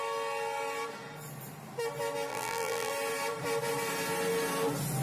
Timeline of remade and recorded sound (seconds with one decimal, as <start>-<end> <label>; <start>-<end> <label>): 0.0-2.3 recorded; 2.3-2.9 remade; 2.9-5.0 recorded